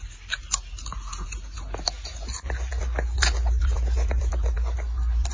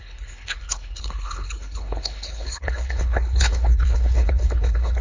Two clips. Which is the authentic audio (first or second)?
first